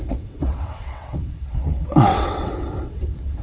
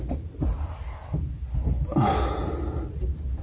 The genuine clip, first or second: second